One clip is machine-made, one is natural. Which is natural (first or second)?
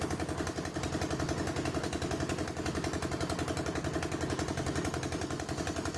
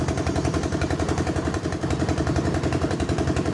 first